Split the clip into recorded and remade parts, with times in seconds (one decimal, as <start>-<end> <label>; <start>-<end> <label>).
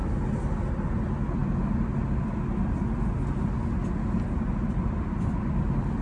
0.0-6.0 recorded